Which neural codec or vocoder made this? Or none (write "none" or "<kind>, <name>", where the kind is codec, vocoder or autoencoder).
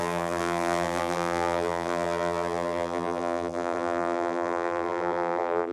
vocoder, BigVGAN v2